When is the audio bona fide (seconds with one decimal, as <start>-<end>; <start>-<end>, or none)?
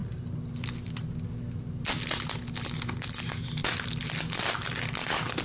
0.0-5.4